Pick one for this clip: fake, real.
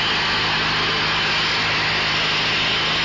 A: real